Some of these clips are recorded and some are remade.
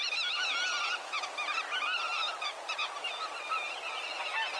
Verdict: remade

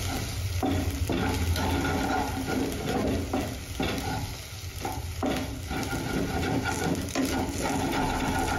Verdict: recorded